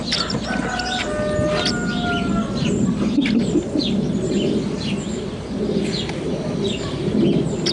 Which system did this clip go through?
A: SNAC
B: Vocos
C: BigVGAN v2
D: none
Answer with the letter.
D